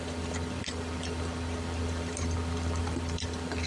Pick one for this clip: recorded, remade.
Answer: remade